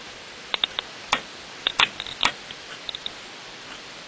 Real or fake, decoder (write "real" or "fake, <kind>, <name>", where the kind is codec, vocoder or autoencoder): real